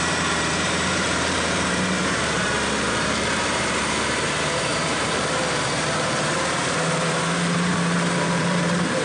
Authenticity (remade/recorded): remade